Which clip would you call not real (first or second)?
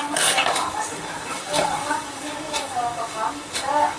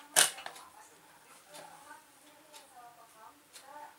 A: first